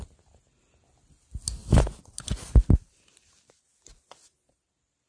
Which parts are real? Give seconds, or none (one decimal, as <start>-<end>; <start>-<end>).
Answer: 0.0-5.1